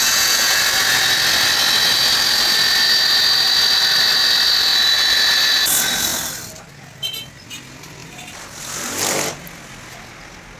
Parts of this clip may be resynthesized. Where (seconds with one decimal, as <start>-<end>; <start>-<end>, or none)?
0.0-0.6